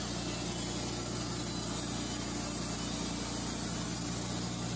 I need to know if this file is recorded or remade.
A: recorded